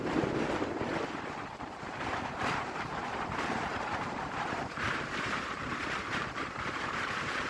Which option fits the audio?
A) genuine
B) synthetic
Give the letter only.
B